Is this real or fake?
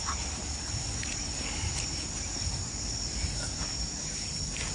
real